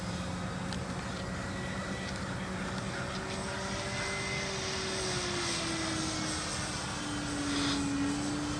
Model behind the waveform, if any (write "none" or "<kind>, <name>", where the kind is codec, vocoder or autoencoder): none